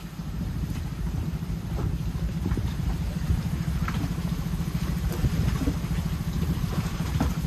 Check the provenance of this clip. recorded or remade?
remade